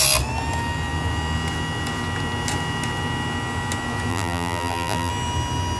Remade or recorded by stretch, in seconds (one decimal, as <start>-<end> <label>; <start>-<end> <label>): 0.0-4.1 recorded; 4.1-5.1 remade; 5.1-5.8 recorded